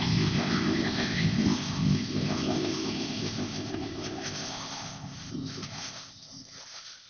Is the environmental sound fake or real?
fake